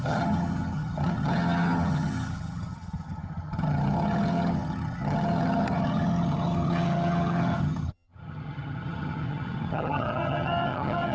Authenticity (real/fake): fake